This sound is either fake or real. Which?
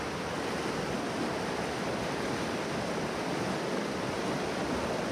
fake